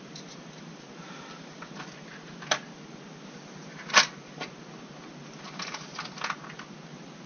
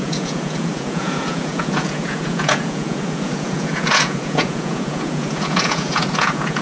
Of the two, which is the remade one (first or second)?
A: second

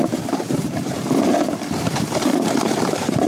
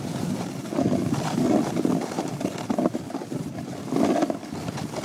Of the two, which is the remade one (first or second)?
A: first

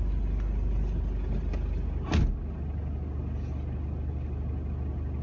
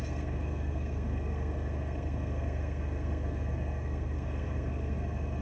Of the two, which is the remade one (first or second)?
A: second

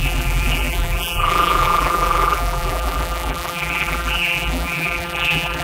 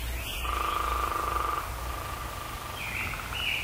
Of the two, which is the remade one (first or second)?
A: first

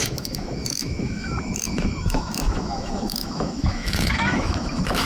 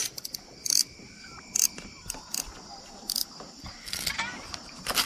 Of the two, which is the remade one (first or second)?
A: first